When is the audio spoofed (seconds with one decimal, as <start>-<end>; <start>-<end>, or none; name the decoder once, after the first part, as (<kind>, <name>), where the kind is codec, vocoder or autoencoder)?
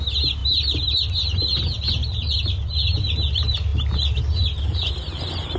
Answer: none